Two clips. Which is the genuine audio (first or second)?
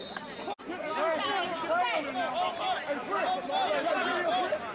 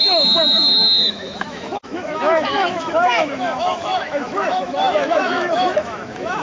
first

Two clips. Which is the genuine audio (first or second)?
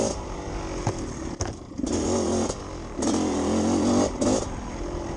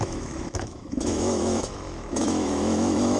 first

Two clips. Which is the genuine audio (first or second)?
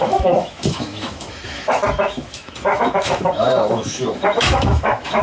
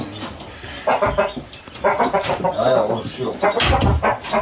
second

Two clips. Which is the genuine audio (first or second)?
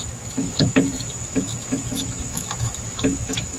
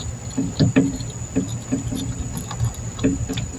second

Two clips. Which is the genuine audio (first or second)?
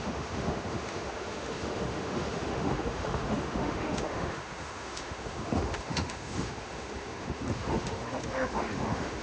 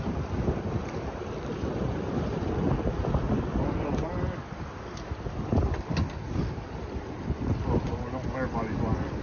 second